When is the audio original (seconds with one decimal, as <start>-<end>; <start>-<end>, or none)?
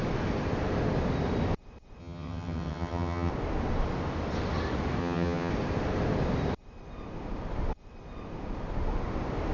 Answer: 0.0-2.0; 3.3-5.0; 5.5-9.5